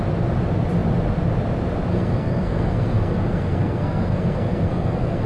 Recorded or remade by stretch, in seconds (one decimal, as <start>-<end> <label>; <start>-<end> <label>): 0.0-1.9 recorded; 1.9-5.3 remade